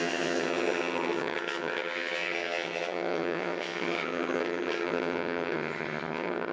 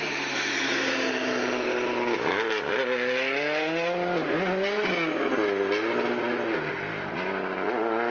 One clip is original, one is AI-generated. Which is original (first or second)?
second